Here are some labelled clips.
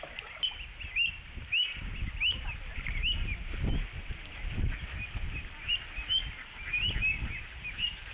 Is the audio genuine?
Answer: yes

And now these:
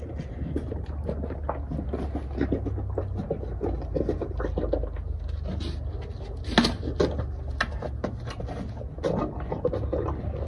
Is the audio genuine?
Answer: yes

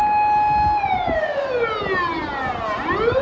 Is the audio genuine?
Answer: yes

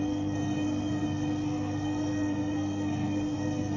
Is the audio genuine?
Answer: no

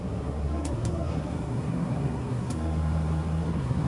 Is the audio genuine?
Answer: no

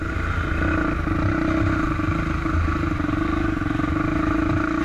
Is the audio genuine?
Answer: yes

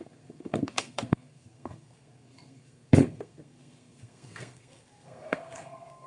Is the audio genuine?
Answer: no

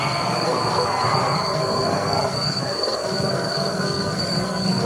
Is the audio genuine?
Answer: no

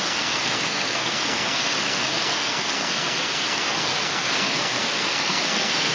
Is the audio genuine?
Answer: no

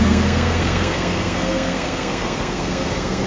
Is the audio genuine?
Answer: no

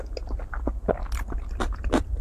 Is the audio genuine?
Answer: yes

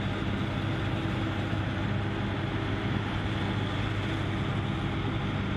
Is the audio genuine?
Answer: yes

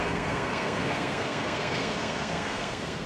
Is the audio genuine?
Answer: no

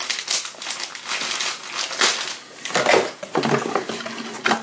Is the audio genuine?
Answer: yes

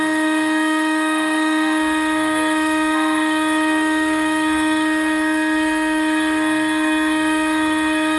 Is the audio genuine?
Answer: no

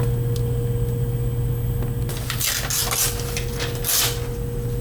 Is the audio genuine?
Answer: yes